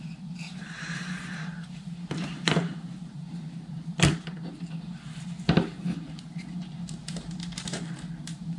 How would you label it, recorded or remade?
remade